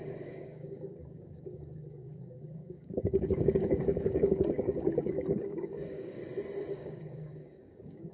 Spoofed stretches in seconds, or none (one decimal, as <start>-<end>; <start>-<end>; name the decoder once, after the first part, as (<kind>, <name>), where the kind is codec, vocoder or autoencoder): 0.0-6.2 (codec, DAC); 6.7-8.1